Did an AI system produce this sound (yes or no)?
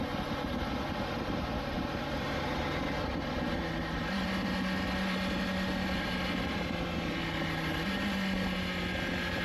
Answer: no